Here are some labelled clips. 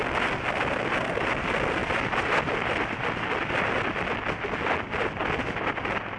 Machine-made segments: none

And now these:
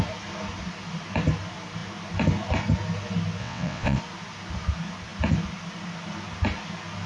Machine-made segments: 3.4-4.0 (vocoder, WaveNeXt)

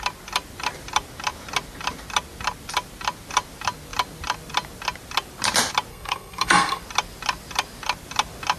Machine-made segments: 5.9-6.8 (codec, SNAC)

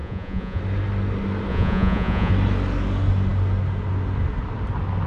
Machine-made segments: 0.0-0.6 (vocoder, Vocos); 1.5-2.3

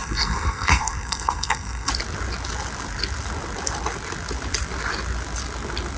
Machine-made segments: 0.0-1.9 (codec, SNAC)

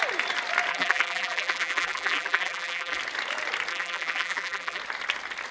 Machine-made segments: 0.7-3.0 (vocoder, BigVGAN v2); 3.7-4.8

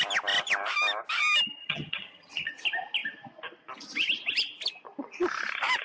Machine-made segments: 1.6-2.5 (vocoder, HiFi-GAN)

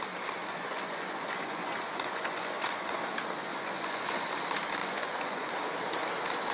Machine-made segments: 0.4-3.0 (vocoder, Vocos); 3.5-4.3; 4.8-5.5